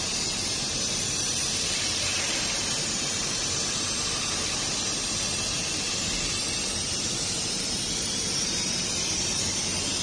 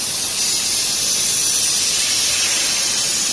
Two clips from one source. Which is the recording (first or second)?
second